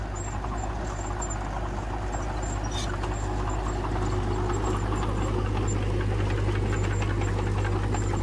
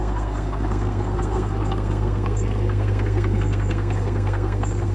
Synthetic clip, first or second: second